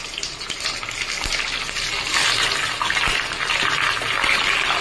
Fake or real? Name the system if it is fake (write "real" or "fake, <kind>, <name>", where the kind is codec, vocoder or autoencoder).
real